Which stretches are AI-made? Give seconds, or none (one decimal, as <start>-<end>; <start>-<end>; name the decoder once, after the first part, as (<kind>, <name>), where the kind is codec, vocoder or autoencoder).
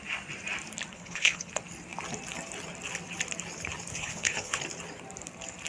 0.9-1.5 (codec, HILCodec); 3.9-4.6